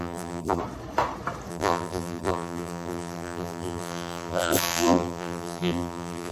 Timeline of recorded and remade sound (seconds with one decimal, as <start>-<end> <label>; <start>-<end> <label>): 0.0-0.6 remade; 0.6-1.5 recorded; 1.5-6.3 remade